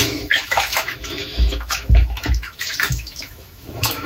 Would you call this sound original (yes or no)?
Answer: no